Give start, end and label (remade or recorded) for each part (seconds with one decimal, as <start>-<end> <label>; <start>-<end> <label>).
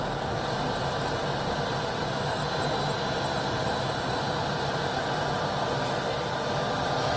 0.0-7.2 recorded